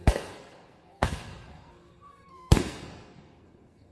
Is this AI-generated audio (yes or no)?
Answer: yes